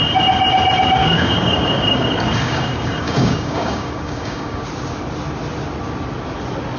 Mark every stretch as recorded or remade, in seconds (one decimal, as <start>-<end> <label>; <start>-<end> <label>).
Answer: 0.0-1.0 recorded; 1.0-4.6 remade; 4.6-6.8 recorded